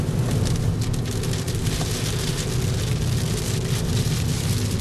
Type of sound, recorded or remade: recorded